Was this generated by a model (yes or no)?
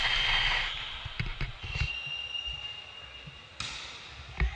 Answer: no